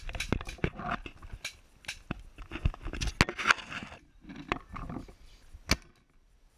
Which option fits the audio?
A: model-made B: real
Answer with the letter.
B